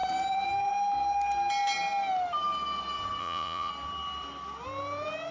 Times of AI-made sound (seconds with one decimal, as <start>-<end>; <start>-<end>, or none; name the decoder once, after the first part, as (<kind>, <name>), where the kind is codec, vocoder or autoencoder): 3.2-3.7 (vocoder, Vocos)